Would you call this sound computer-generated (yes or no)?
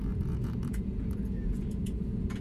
yes